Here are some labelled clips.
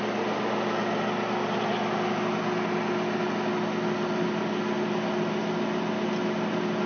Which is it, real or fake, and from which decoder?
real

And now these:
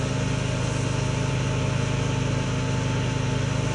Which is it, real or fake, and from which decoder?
real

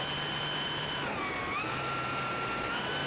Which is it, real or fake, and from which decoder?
fake, vocoder, BigVGAN v2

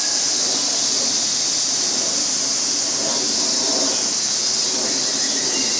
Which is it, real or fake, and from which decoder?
real